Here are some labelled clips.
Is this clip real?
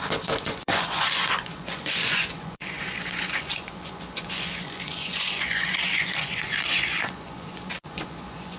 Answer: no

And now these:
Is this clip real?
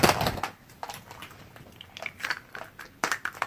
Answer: yes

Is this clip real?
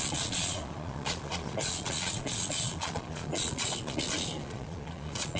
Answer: no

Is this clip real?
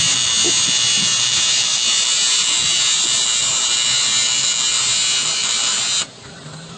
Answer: yes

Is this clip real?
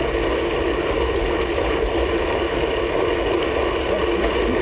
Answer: yes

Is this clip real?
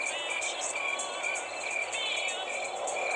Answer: no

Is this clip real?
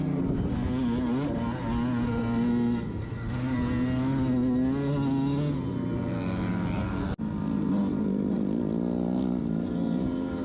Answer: yes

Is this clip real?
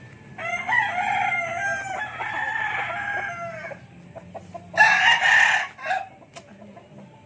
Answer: yes